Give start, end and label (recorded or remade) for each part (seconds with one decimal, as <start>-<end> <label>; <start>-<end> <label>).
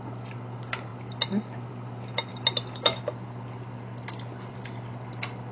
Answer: 0.0-5.5 recorded